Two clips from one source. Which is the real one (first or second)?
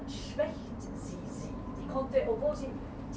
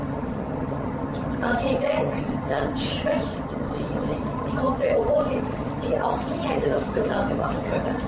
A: first